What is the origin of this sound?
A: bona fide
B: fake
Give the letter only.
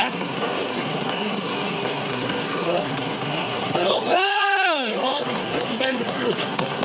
B